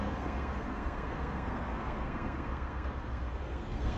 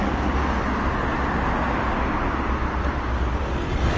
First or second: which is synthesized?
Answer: first